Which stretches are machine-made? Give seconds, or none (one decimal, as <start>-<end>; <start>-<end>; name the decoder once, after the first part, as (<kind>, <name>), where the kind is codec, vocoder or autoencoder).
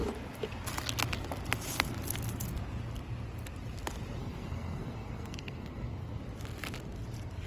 4.2-6.2 (codec, SNAC)